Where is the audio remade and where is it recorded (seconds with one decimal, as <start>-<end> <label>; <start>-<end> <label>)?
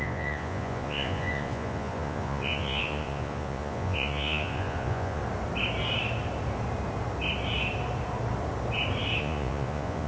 0.0-5.2 remade; 5.2-9.2 recorded; 9.2-10.1 remade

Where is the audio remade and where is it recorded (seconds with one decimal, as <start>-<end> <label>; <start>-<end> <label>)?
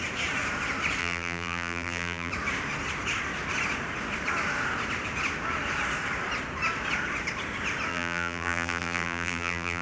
0.0-1.0 recorded; 1.0-2.3 remade; 2.3-7.9 recorded; 7.9-9.8 remade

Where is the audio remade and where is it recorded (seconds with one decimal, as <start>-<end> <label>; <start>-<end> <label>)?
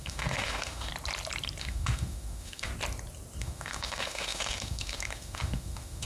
0.0-0.9 remade; 0.9-1.6 recorded; 1.6-2.7 remade; 2.7-3.4 recorded; 3.4-6.1 remade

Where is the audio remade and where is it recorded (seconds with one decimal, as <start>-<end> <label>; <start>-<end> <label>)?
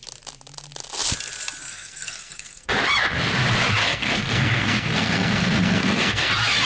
0.0-1.7 recorded; 1.7-2.7 remade; 2.7-3.8 recorded; 3.8-6.3 remade; 6.3-6.7 recorded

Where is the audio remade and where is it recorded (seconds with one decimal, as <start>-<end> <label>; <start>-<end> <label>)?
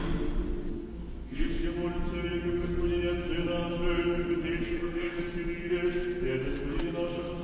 0.0-0.7 recorded; 0.7-1.6 remade; 1.6-4.6 recorded; 4.6-5.2 remade; 5.2-7.4 recorded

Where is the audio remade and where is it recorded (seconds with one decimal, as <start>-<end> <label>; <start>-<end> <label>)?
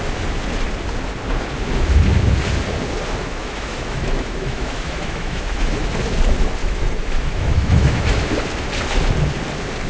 0.0-3.4 recorded; 3.4-5.7 remade; 5.7-6.6 recorded; 6.6-8.2 remade; 8.2-9.9 recorded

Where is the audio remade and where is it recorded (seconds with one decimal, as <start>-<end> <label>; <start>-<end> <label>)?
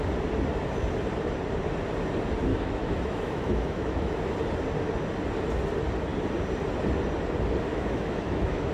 0.0-2.5 recorded; 2.5-4.2 remade; 4.2-7.7 recorded; 7.7-8.7 remade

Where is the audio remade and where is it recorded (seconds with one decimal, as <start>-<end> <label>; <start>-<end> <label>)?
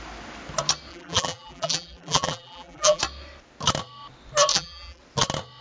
0.0-0.9 recorded; 0.9-3.0 remade; 3.0-4.5 recorded; 4.5-5.0 remade; 5.0-5.6 recorded